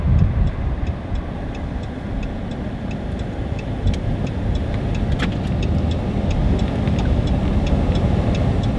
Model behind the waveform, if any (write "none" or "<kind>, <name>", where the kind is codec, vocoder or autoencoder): none